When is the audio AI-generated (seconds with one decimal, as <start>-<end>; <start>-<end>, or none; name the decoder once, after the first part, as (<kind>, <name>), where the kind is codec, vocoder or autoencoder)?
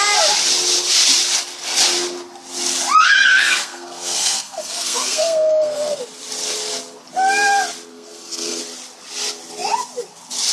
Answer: 3.3-6.0 (codec, SNAC); 7.9-8.6